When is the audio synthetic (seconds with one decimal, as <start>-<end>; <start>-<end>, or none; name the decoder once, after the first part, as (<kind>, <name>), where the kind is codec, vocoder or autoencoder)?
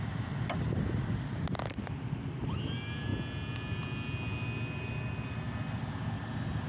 none